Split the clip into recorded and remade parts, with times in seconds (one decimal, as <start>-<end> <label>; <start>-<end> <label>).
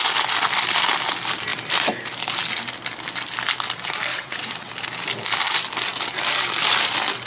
0.0-4.1 recorded; 4.1-4.7 remade; 4.7-7.3 recorded